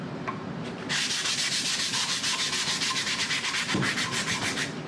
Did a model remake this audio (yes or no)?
no